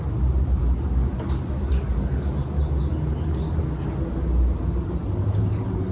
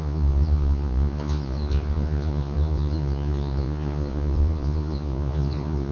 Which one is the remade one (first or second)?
second